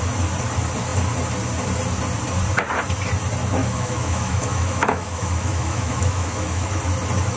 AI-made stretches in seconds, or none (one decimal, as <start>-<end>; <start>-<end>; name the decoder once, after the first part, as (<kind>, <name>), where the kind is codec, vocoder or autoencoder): 3.6-6.8 (autoencoder, DAC-VAE)